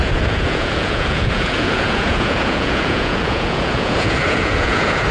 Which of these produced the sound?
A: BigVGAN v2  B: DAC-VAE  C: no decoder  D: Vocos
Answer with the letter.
D